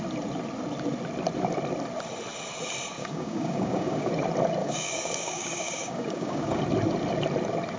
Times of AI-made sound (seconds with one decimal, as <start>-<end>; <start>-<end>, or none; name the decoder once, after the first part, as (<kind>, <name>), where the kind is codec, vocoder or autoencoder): 3.0-4.1 (codec, DAC); 4.6-6.6